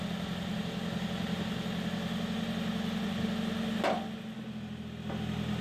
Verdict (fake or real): real